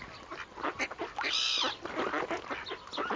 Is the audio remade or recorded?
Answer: recorded